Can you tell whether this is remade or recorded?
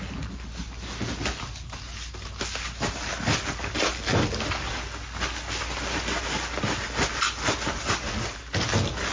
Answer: recorded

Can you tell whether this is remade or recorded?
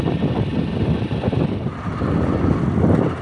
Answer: recorded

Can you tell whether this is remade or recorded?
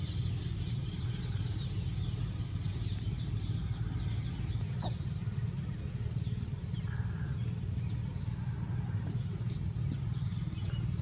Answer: recorded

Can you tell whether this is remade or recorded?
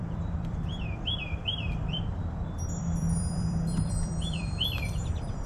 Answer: remade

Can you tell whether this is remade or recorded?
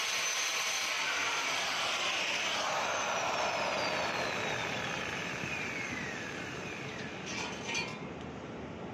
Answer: remade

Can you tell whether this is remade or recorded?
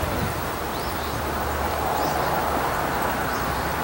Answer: remade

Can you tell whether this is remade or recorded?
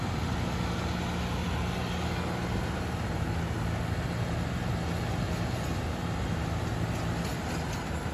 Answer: recorded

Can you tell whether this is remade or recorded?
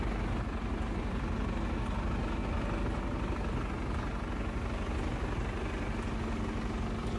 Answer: recorded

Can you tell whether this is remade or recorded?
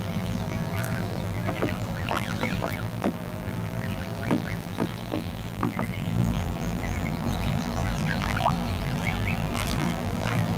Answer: remade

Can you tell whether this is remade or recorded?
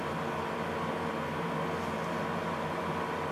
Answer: remade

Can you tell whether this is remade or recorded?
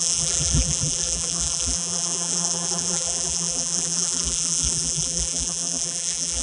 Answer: remade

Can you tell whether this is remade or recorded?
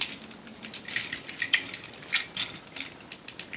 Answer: recorded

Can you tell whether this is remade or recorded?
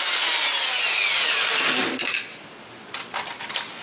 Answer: recorded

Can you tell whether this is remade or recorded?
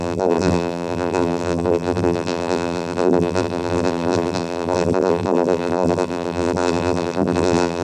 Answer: remade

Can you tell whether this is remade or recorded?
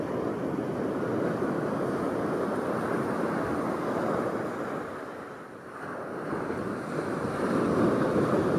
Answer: recorded